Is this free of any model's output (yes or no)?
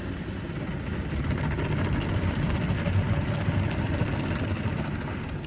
yes